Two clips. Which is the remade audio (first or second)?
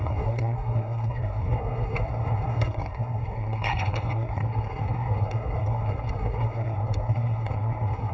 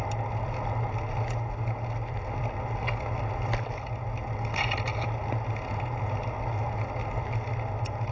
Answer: first